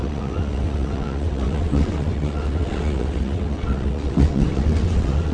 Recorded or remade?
remade